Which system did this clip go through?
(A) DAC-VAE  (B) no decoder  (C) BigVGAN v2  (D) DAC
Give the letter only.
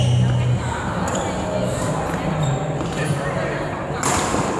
B